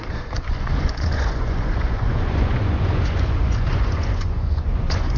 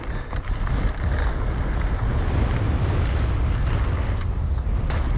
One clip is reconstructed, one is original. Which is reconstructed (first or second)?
first